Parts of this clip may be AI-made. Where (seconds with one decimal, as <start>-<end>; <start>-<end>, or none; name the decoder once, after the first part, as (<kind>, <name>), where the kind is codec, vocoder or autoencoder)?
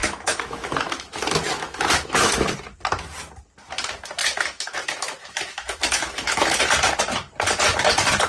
0.0-2.3 (autoencoder, DAC-VAE); 4.2-6.6